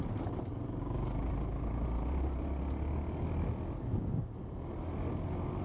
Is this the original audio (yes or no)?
yes